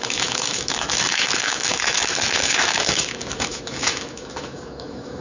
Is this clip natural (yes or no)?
no